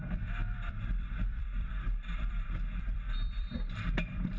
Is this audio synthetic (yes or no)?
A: yes